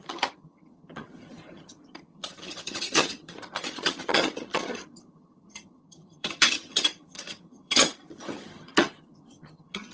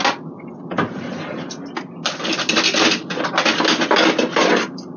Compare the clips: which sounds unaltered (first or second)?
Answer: second